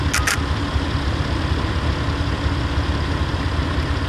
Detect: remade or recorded recorded